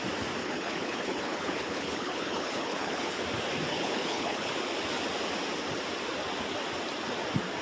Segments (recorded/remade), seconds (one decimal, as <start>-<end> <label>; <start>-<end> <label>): 0.0-0.4 recorded; 0.4-3.2 remade; 3.2-3.7 recorded; 3.7-4.5 remade; 4.5-7.6 recorded